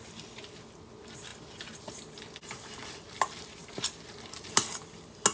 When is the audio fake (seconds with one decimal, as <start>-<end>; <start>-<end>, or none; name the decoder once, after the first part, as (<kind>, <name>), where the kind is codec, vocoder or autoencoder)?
none